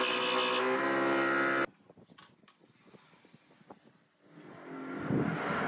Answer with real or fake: real